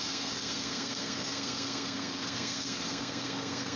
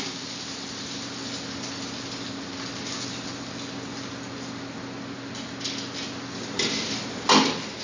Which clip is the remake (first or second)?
first